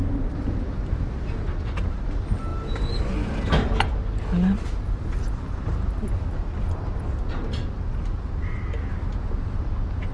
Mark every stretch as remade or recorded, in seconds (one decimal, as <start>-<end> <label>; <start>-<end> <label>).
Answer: 0.0-10.1 recorded